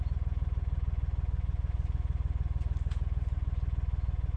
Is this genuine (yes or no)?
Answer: yes